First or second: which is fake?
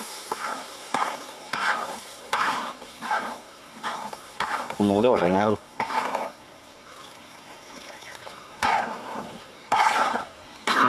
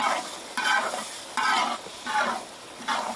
first